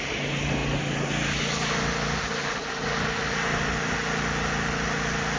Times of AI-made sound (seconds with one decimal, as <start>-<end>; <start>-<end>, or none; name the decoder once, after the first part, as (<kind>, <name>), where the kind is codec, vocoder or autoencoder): none